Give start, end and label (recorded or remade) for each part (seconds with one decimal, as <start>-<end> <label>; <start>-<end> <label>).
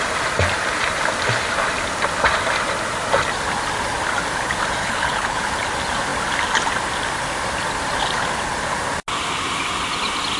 0.0-4.8 recorded; 4.8-5.5 remade; 5.5-10.4 recorded